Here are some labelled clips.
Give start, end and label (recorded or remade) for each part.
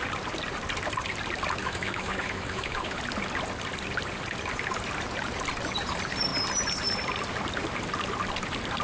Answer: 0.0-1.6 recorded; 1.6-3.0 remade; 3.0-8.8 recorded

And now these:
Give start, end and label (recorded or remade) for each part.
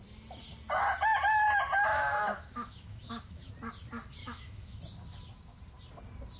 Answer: 0.0-1.9 recorded; 1.9-3.5 remade; 3.5-4.2 recorded; 4.2-4.8 remade; 4.8-6.4 recorded